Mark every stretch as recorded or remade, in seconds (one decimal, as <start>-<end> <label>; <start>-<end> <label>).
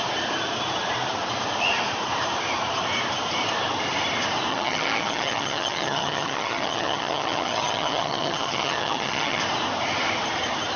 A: 0.0-4.5 recorded; 4.5-9.4 remade; 9.4-10.8 recorded